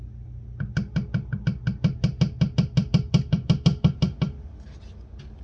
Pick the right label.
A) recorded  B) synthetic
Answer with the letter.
A